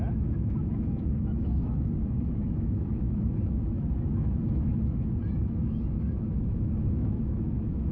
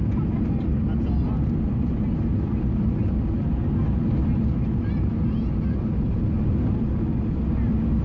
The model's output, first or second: first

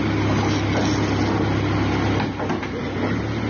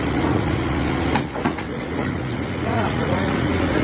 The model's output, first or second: second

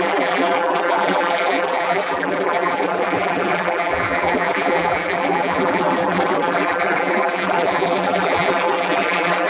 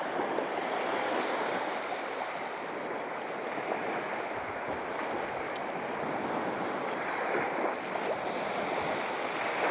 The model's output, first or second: first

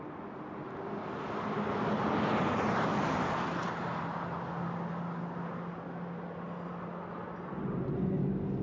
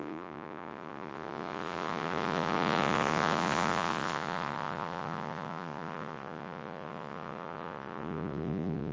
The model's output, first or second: second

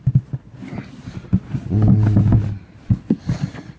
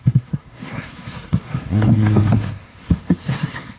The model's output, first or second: second